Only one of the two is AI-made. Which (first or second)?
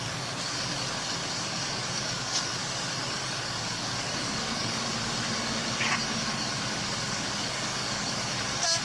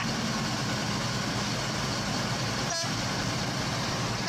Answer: first